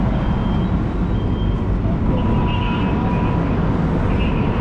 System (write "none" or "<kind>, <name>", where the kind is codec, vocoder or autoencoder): none